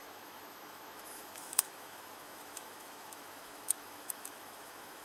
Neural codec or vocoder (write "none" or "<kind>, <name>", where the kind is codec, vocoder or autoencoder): autoencoder, DAC-VAE